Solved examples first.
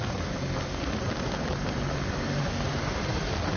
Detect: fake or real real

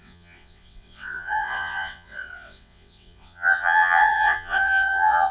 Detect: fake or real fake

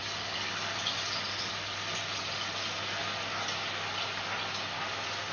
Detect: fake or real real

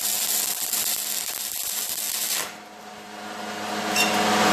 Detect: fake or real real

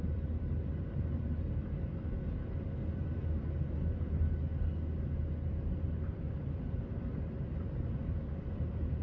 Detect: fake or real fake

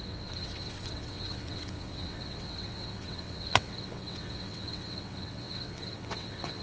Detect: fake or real fake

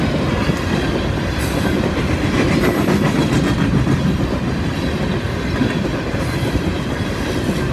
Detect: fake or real real